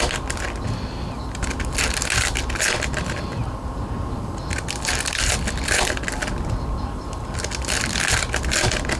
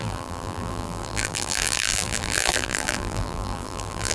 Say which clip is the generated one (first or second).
second